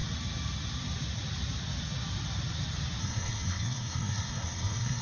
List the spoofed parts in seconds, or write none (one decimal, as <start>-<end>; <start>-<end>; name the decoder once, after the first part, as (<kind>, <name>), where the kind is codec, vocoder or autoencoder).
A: 3.0-5.0 (codec, SNAC)